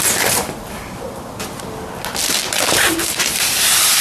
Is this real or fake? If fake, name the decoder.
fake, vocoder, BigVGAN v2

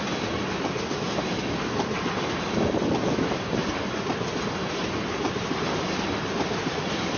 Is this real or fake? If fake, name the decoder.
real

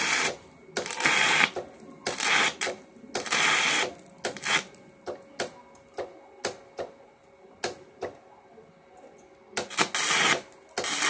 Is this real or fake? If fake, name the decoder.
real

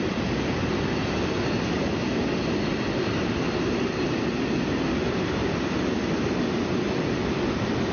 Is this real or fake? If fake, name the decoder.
real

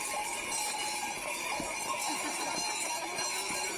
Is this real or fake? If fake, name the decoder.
real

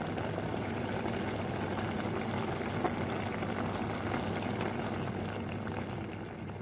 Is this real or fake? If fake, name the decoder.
real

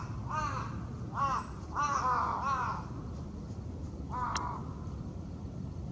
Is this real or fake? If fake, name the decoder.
real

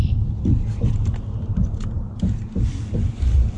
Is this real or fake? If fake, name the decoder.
real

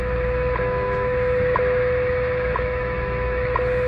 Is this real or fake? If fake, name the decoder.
fake, autoencoder, DAC-VAE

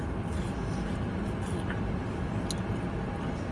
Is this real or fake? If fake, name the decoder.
real